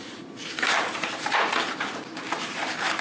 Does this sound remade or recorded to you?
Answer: remade